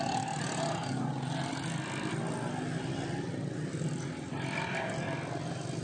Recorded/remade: recorded